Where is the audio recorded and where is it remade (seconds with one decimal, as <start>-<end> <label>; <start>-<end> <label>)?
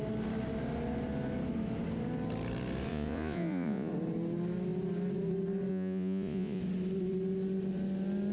0.0-2.9 recorded; 2.9-3.9 remade; 3.9-5.7 recorded; 5.7-6.6 remade; 6.6-8.3 recorded